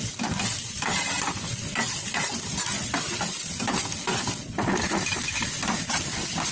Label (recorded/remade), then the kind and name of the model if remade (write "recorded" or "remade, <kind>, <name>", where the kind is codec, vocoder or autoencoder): recorded